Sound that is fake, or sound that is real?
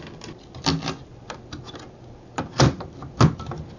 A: real